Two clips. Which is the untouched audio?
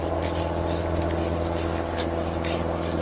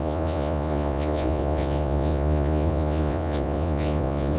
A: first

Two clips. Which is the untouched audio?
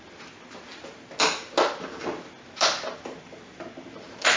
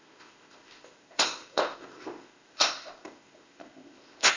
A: first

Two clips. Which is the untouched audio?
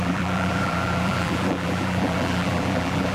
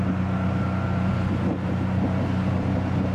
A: second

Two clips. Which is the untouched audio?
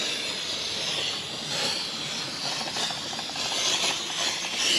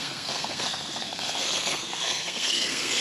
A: first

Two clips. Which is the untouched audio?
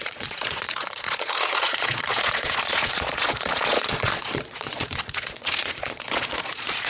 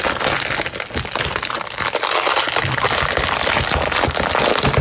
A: second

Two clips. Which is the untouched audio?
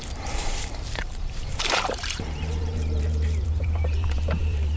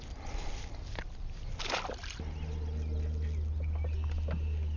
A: second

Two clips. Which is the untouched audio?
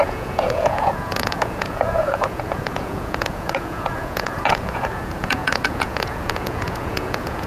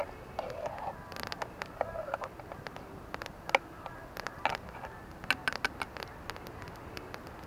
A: second